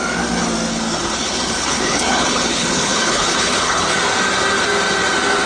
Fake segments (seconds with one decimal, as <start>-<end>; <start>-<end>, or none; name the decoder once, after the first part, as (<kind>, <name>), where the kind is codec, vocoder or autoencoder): 0.7-4.0 (codec, HILCodec)